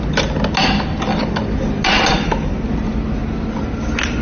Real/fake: real